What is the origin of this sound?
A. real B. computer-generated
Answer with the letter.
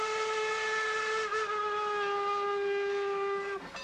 A